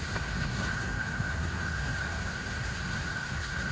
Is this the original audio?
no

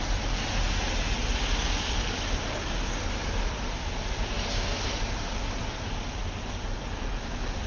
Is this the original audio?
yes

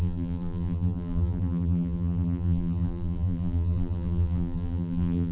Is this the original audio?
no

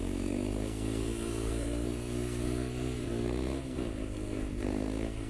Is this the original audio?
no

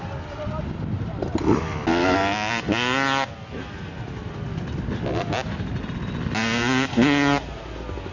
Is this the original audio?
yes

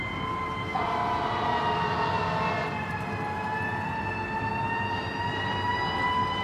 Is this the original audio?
yes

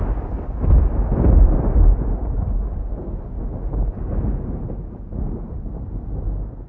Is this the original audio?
yes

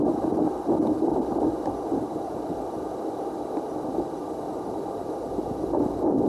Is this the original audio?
yes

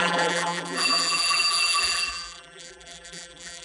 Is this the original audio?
no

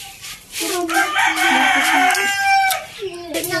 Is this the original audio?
yes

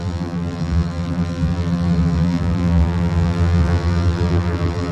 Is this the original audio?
no